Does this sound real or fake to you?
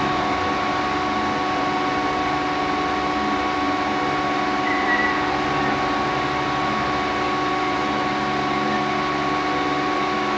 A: real